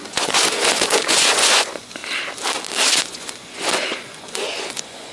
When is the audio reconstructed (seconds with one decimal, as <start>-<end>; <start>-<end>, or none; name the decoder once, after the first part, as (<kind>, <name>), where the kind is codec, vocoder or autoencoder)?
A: 0.0-2.0 (vocoder, Vocos); 3.0-5.1

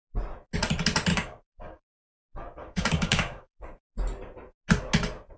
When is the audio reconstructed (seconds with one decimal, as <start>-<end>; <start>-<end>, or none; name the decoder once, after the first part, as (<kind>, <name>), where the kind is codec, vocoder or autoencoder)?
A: 1.1-2.2 (codec, DAC); 2.6-3.9

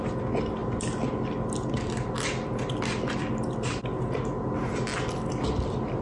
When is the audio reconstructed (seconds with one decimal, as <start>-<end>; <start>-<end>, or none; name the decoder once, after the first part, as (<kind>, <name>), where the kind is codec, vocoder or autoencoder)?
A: none

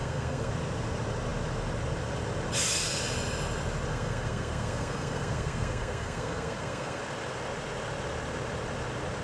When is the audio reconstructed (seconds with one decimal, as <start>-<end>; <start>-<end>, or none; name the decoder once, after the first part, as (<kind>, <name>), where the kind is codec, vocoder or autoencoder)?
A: 0.0-0.5 (codec, SNAC); 3.9-7.0

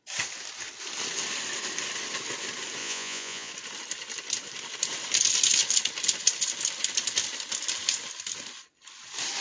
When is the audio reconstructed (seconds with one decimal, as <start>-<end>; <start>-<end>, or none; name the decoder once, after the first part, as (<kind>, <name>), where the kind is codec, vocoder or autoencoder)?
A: 2.8-3.5 (vocoder, Vocos)

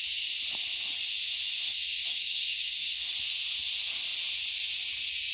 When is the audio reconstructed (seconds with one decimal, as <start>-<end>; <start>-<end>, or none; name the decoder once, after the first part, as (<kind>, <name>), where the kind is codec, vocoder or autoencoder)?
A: 1.6-3.1 (codec, SNAC)